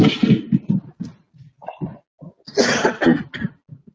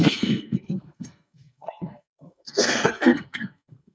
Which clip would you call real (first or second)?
first